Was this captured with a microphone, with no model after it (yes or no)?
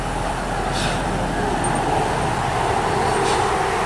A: yes